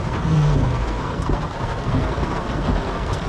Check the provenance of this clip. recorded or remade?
remade